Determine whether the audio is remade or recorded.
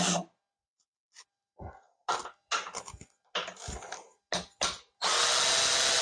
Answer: recorded